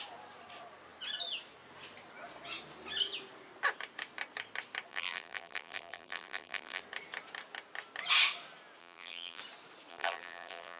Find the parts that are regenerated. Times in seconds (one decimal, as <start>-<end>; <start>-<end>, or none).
4.9-6.8; 8.8-9.4; 9.9-10.8